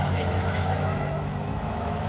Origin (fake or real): fake